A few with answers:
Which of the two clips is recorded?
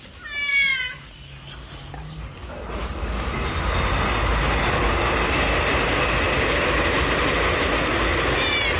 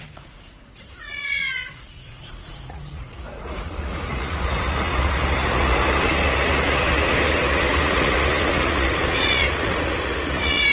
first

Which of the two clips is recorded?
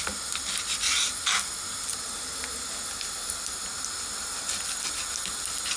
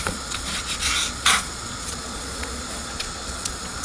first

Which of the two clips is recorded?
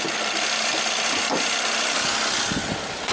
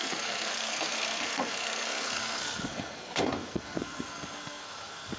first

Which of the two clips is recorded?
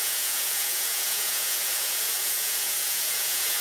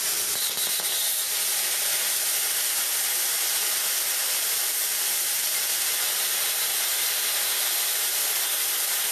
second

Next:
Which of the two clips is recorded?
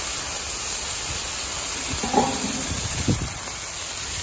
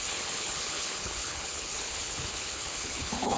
first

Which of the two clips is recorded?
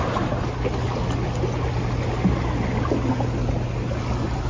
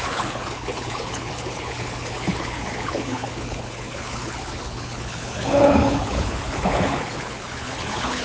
first